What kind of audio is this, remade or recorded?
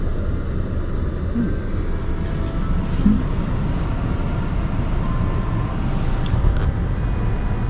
recorded